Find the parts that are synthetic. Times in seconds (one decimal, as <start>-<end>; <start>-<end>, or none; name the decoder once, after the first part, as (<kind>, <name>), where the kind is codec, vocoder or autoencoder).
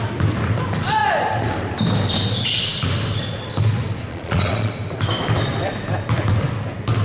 4.1-4.7 (vocoder, Vocos)